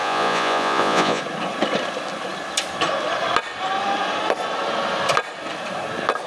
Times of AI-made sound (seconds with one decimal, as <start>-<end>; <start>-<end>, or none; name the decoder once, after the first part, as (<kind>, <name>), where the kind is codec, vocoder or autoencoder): 0.0-1.2 (vocoder, Vocos)